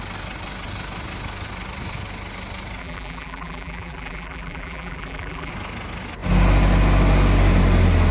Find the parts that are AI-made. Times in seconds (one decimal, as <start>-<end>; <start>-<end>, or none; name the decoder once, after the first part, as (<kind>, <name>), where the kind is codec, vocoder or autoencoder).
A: 2.8-5.5 (vocoder, BigVGAN v2)